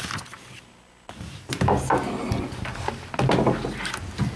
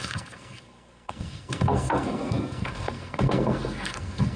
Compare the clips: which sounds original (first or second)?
first